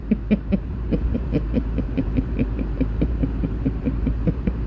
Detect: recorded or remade remade